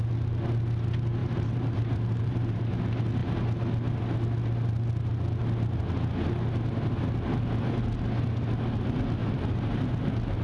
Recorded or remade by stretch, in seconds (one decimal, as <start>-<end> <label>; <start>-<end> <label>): 0.0-1.2 recorded; 1.2-2.6 remade; 2.6-9.2 recorded; 9.2-9.9 remade; 9.9-10.4 recorded